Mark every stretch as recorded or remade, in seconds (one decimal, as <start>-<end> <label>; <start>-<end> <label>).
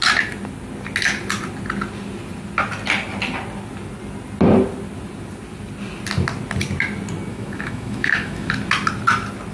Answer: 0.0-7.3 recorded; 7.3-8.5 remade; 8.5-9.5 recorded